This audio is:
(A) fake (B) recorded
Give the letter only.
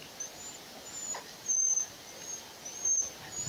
B